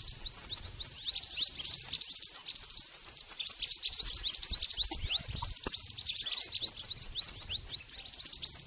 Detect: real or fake real